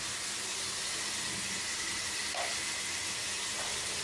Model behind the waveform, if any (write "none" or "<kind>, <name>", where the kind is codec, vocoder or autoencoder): none